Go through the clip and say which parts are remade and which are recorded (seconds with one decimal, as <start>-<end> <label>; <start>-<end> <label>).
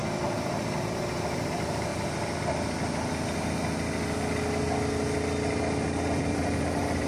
0.0-0.8 recorded; 0.8-1.9 remade; 1.9-6.2 recorded; 6.2-7.1 remade